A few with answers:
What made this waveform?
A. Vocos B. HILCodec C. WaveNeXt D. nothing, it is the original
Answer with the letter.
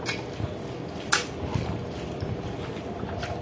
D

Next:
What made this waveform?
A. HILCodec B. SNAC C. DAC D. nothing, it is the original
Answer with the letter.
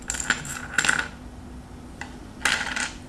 D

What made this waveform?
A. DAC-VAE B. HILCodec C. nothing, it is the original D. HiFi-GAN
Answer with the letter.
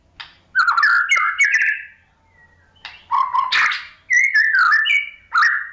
C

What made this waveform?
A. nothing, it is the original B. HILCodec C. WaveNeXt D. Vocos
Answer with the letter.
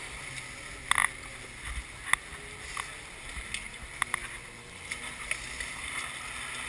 A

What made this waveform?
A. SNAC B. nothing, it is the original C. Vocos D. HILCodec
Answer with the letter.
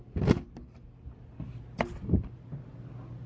B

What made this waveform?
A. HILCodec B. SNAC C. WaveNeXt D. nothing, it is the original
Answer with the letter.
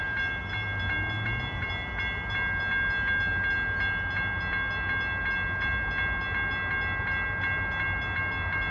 D